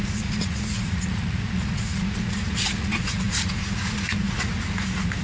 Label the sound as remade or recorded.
remade